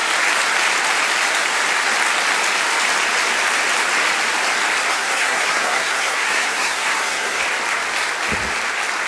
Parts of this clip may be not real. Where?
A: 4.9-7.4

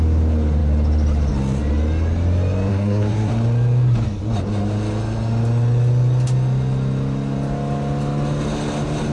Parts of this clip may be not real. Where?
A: 2.7-3.3

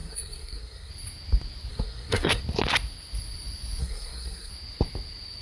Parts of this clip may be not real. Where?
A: 0.0-0.9; 1.7-2.4; 3.8-4.5

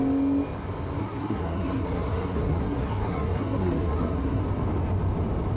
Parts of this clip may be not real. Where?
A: 1.0-4.4

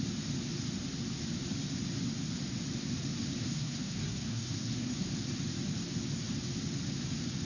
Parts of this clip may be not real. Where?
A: 3.4-5.1

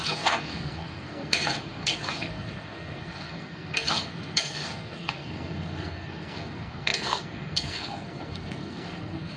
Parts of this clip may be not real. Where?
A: 0.0-9.4